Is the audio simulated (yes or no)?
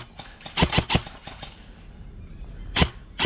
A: no